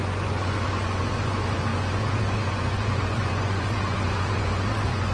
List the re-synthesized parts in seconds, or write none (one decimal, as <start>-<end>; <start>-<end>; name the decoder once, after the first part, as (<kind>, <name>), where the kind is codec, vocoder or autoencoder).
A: 0.0-5.1 (vocoder, Vocos)